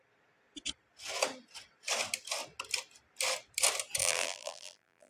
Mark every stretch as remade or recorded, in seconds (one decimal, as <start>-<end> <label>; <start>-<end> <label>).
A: 0.0-4.0 recorded; 4.0-5.1 remade